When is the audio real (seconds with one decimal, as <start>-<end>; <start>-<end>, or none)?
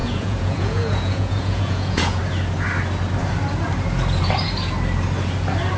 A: 2.2-5.8